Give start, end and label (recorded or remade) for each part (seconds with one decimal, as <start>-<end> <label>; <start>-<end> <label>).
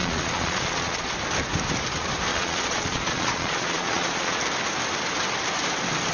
0.0-1.1 remade; 1.1-2.3 recorded; 2.3-4.4 remade; 4.4-6.1 recorded